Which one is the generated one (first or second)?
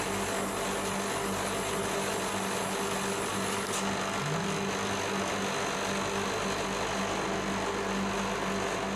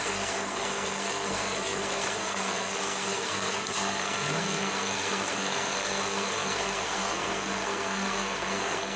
second